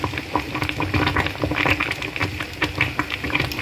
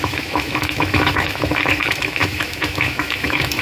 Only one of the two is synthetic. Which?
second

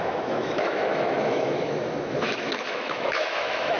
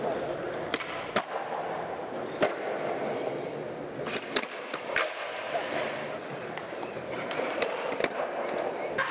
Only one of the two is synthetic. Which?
first